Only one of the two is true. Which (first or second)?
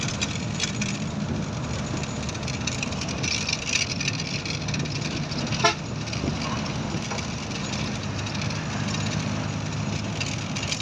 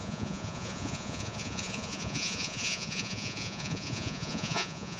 first